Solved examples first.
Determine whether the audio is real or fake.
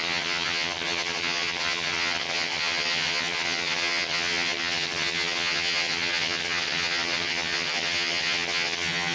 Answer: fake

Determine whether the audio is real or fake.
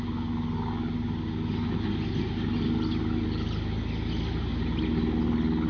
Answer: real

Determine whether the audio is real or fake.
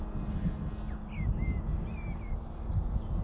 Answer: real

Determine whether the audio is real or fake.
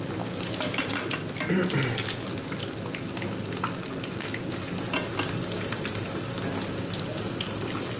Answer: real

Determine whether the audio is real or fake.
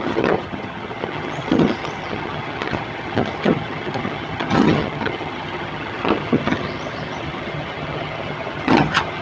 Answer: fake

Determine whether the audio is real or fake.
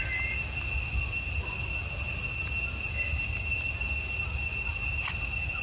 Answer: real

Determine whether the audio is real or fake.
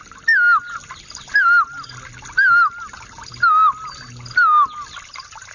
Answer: real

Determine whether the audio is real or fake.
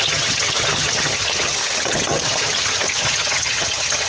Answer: fake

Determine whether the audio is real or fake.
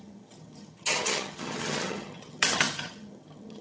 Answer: fake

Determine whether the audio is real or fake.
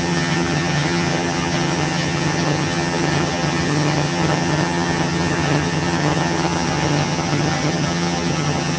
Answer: fake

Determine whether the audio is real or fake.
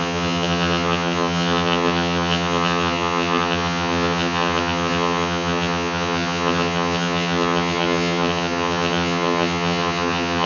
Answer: fake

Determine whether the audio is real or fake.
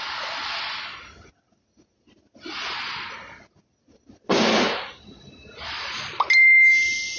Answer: real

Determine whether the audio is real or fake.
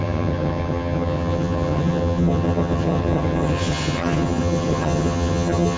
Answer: fake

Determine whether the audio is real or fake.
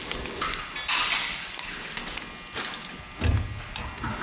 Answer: real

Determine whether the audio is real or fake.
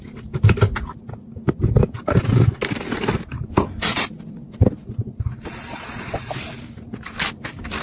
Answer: real